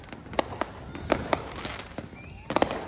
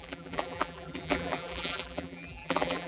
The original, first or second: first